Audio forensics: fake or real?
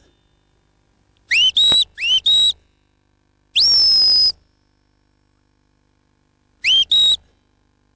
real